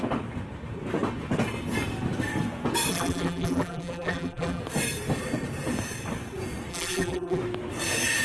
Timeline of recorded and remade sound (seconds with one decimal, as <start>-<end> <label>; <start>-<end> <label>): 0.0-2.9 recorded; 2.9-4.6 remade; 4.6-6.7 recorded; 6.7-7.4 remade; 7.4-8.2 recorded